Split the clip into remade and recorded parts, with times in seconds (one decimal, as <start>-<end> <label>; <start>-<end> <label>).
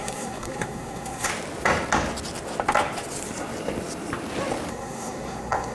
0.0-1.3 remade; 1.3-4.7 recorded; 4.7-5.7 remade